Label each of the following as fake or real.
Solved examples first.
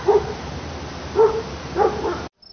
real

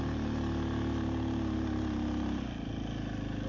real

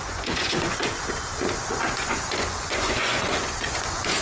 fake